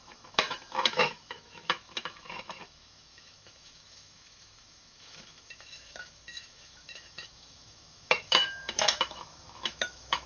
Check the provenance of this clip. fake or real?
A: fake